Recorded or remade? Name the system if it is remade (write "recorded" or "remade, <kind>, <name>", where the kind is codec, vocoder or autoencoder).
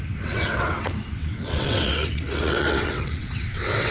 remade, vocoder, WaveNeXt